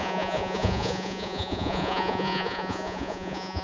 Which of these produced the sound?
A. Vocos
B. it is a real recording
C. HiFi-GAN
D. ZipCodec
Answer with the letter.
A